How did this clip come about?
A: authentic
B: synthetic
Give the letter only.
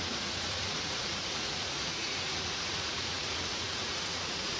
B